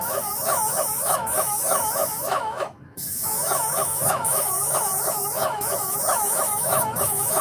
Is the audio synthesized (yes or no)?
yes